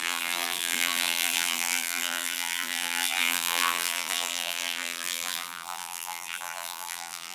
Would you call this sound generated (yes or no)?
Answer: yes